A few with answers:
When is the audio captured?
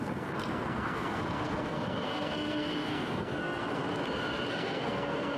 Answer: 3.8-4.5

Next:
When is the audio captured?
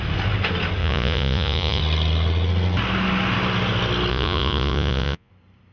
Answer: 0.0-0.8; 1.8-4.1; 5.3-5.7